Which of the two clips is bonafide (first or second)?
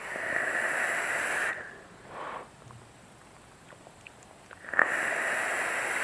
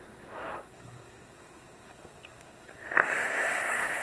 first